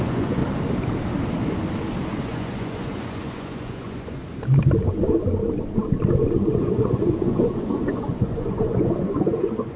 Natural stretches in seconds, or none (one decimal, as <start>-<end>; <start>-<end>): 0.4-2.2; 4.2-6.5